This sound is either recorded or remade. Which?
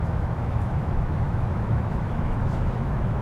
remade